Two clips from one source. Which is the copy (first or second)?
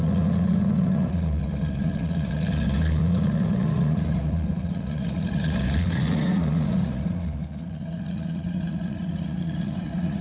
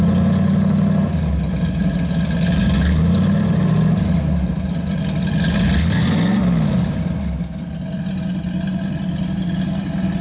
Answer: first